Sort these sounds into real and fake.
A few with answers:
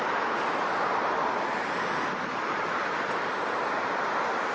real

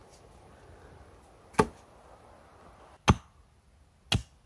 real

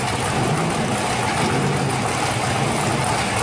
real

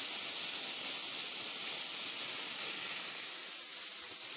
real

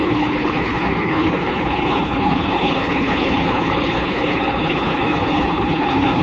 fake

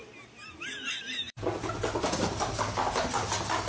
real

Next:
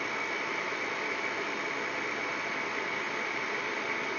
real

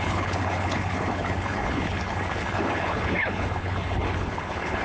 fake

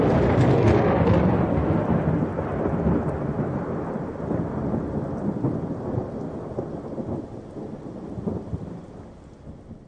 real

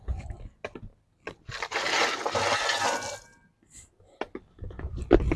real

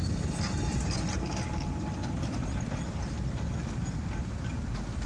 real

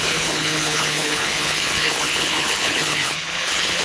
fake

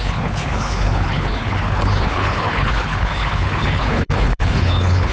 fake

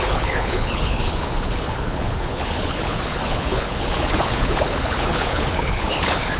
fake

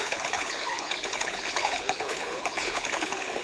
fake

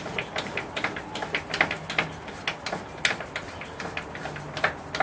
real